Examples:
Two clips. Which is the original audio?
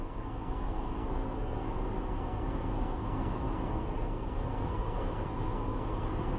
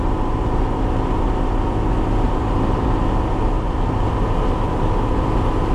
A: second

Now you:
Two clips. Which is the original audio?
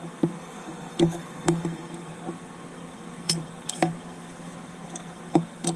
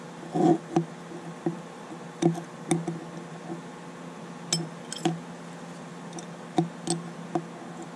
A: second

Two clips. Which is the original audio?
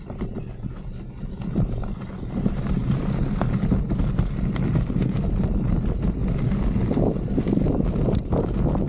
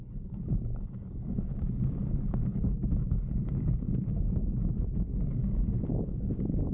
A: first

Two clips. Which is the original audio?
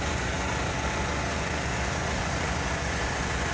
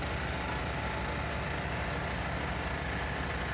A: second